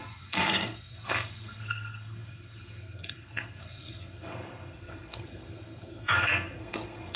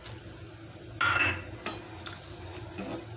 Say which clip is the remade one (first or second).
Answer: first